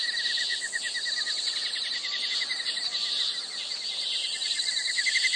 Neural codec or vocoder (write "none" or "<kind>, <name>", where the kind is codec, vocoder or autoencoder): none